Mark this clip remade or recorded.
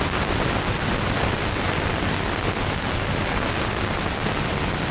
recorded